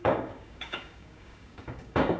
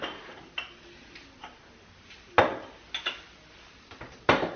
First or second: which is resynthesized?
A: first